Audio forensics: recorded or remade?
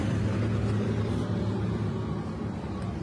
recorded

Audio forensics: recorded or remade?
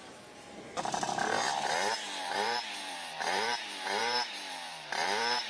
remade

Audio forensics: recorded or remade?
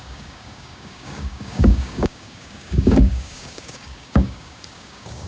remade